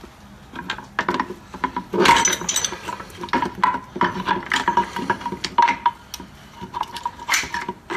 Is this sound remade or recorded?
recorded